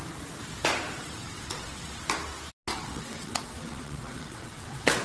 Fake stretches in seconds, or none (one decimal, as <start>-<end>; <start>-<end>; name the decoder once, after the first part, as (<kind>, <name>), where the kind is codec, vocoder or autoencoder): 1.0-2.0 (vocoder, WaveNeXt); 2.7-5.0